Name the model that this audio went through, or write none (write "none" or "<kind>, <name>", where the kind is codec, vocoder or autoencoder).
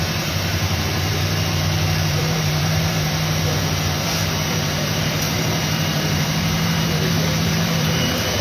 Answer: vocoder, BigVGAN v2